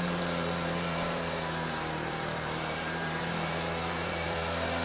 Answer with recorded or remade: remade